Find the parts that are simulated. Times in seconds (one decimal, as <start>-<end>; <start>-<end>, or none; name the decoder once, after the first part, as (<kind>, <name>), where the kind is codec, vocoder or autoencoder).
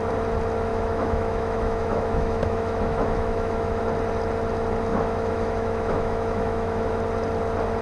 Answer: 0.7-3.8 (autoencoder, DAC-VAE); 4.9-6.9